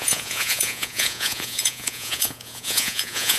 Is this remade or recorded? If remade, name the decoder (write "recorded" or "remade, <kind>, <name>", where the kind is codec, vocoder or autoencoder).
remade, vocoder, Vocos